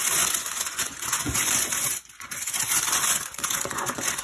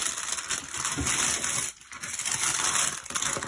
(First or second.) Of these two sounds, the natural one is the second